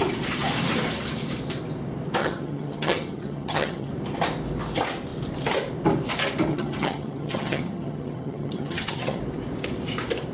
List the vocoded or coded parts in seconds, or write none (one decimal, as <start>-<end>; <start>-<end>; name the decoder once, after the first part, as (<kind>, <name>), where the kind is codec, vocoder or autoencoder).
2.2-3.9 (vocoder, HiFi-GAN); 6.5-9.2